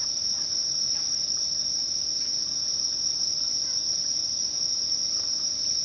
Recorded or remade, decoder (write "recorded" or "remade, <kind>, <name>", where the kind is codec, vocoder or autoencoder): remade, vocoder, BigVGAN v2